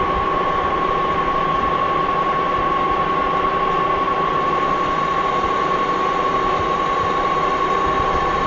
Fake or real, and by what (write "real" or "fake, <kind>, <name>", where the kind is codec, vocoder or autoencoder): real